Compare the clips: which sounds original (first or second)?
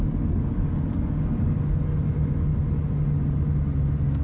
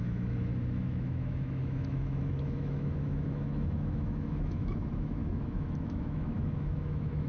first